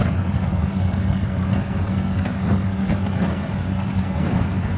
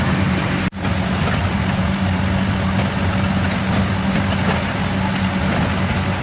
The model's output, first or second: first